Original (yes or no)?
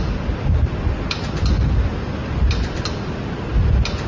yes